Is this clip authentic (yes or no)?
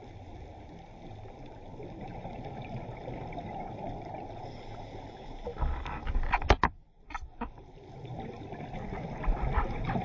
yes